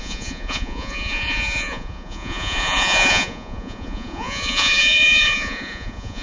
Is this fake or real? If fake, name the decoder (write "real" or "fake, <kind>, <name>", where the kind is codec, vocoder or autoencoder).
fake, vocoder, Vocos